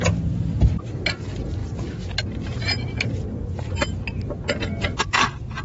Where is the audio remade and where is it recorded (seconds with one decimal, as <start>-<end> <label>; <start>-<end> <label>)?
0.0-5.6 recorded